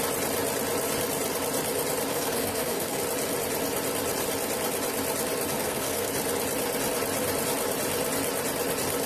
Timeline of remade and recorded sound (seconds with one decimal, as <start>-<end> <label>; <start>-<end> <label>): 0.0-2.1 recorded; 2.1-3.0 remade; 3.0-5.6 recorded; 5.6-6.1 remade; 6.1-9.1 recorded